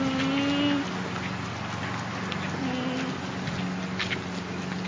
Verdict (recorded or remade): recorded